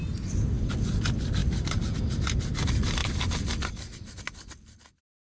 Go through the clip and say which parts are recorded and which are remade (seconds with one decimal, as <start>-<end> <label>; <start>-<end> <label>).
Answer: 0.0-1.4 recorded; 1.4-2.0 remade; 2.0-5.2 recorded